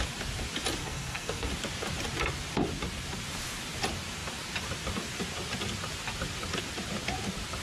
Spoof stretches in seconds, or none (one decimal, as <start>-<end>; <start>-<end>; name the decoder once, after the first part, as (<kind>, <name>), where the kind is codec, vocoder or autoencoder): 0.8-1.5 (codec, SNAC)